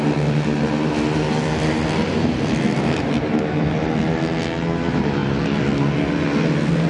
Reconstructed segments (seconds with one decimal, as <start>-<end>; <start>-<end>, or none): none